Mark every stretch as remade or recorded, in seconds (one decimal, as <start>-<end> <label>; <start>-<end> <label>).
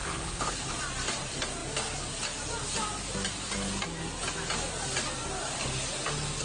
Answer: 0.0-0.7 remade; 0.7-6.4 recorded